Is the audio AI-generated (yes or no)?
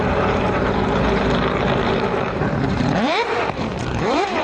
yes